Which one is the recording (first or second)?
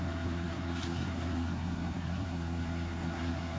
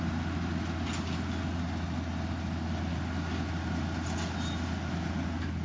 second